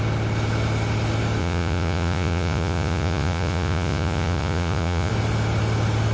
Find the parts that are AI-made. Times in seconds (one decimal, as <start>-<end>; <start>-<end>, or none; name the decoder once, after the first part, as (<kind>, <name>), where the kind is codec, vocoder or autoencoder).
1.4-5.1 (vocoder, Vocos)